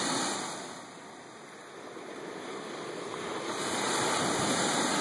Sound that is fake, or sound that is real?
real